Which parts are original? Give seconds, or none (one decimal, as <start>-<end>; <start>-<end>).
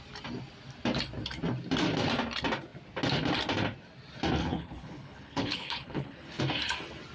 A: 0.0-4.4; 6.4-7.1